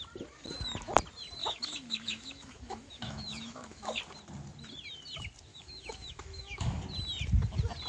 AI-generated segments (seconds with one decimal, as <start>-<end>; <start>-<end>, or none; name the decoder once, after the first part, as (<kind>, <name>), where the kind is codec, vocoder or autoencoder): 1.4-4.0 (autoencoder, DAC-VAE); 5.5-6.8